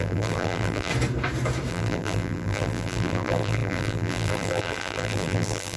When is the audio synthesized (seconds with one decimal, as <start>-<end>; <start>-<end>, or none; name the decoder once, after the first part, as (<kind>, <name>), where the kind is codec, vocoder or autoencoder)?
0.0-0.9 (vocoder, BigVGAN v2); 1.7-5.8